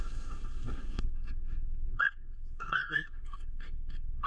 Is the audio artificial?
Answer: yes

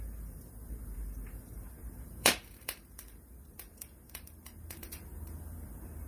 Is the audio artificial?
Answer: yes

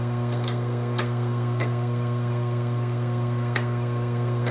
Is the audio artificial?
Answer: yes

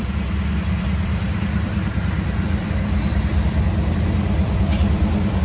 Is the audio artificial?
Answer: yes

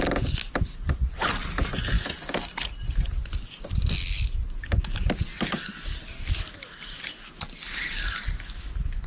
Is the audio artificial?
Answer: no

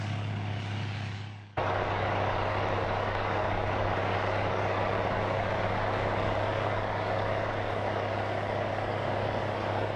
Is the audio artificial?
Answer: yes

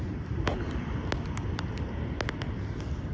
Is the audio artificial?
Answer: no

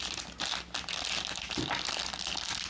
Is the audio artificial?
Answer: no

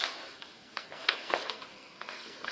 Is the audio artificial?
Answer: yes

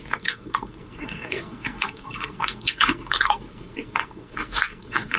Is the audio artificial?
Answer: yes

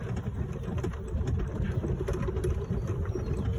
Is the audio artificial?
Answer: no